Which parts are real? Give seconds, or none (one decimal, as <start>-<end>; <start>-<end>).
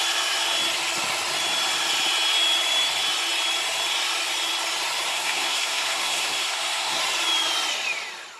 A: 0.0-5.1; 7.0-8.4